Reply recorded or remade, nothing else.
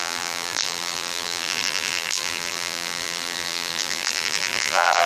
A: remade